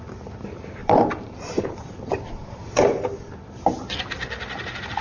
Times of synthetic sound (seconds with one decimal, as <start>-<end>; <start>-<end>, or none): 0.8-3.3